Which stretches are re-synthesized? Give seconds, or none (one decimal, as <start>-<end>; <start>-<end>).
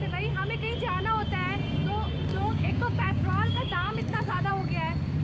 2.3-4.5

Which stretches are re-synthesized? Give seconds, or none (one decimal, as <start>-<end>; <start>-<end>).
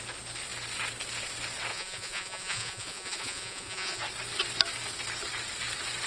1.7-4.0